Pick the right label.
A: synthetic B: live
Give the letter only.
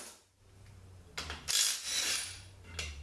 B